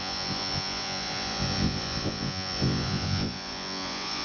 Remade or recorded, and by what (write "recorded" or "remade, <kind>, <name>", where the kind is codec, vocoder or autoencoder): remade, vocoder, Vocos